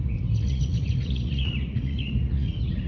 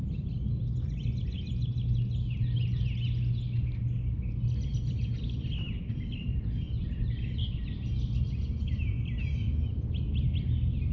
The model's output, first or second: first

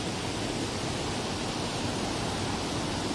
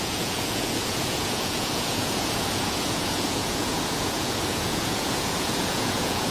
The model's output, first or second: second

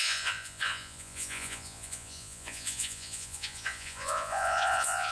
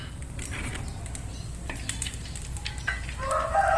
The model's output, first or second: first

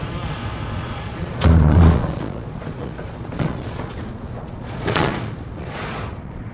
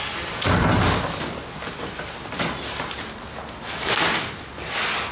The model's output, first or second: first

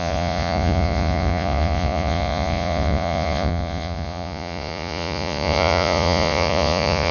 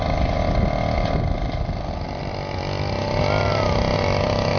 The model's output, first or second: first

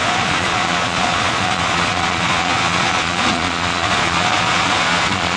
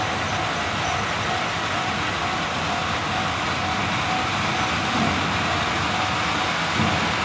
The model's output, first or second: first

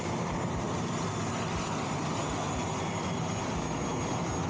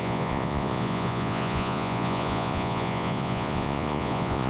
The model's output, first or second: second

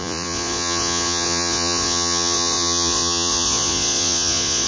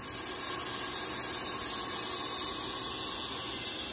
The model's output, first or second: first